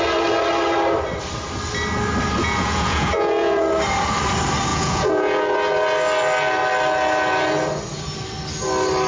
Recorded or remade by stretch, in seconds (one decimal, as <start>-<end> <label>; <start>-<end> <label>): 0.0-2.4 recorded; 2.4-3.7 remade; 3.7-4.7 recorded; 4.7-5.7 remade; 5.7-9.1 recorded